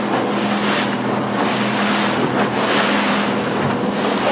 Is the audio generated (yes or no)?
no